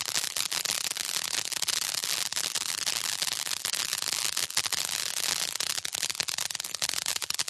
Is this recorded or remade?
remade